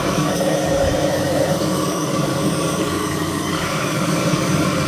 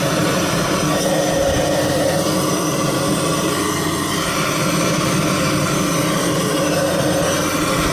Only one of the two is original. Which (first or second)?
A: second